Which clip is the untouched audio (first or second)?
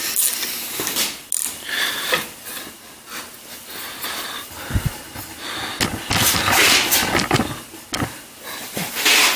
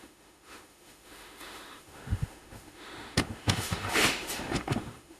first